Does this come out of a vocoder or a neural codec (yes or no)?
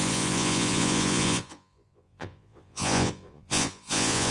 yes